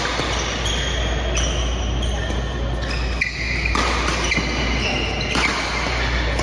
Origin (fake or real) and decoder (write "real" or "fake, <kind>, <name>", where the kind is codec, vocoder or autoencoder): real